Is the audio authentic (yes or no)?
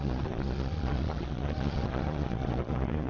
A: no